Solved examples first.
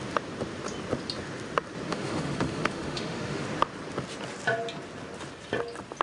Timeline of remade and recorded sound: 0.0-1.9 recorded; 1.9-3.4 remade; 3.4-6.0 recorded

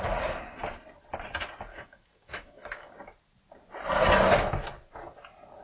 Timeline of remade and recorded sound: 0.0-1.7 recorded; 1.7-2.9 remade; 2.9-5.6 recorded

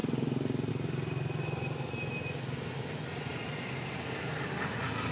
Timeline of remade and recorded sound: 0.0-5.1 recorded

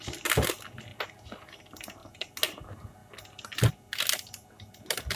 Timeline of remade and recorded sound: 0.0-5.2 recorded

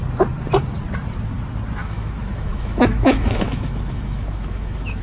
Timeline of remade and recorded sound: 0.0-1.8 recorded; 1.8-5.0 remade

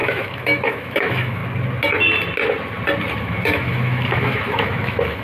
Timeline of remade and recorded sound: 0.0-1.4 remade; 1.4-3.2 recorded; 3.2-5.2 remade

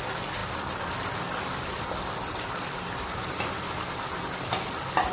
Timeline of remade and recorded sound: 0.0-5.1 recorded